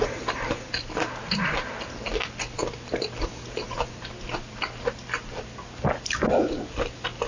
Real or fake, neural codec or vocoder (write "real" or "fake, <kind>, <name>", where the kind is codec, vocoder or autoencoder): real